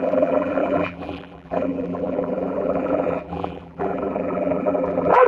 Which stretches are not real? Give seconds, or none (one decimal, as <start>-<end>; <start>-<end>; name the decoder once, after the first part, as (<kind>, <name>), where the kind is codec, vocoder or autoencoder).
0.0-5.3 (vocoder, BigVGAN v2)